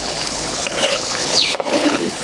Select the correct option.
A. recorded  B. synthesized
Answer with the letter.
B